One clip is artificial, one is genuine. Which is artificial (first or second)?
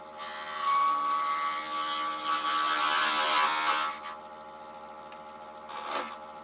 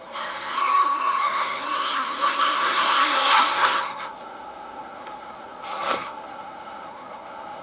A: second